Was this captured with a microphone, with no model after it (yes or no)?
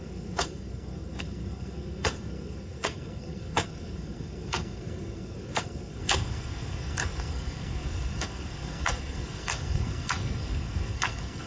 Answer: no